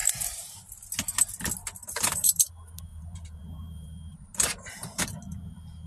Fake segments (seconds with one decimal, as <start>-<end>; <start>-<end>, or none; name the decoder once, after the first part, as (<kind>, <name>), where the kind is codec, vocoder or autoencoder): 0.0-0.6 (vocoder, BigVGAN v2); 1.8-2.5; 2.9-5.0